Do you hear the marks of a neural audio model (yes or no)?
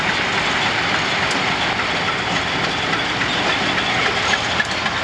no